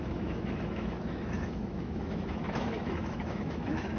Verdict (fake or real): fake